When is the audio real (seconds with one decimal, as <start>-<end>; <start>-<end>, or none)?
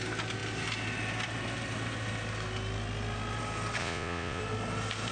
0.0-3.8; 4.4-5.1